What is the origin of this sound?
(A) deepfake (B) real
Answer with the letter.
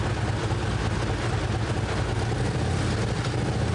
B